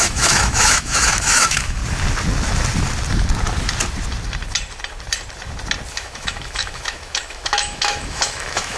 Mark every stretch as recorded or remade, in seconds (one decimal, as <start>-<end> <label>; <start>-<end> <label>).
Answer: 0.0-1.8 remade; 1.8-5.9 recorded; 5.9-8.8 remade